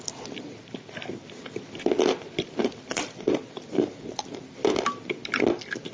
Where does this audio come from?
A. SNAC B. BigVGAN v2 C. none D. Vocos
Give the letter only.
B